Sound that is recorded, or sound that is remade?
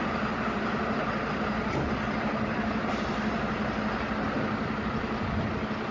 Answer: recorded